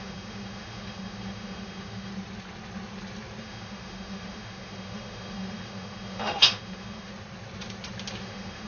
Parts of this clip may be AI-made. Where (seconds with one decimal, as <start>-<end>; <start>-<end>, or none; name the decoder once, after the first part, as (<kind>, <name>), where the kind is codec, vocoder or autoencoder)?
0.0-2.1 (autoencoder, DAC-VAE); 3.4-7.1; 8.2-8.7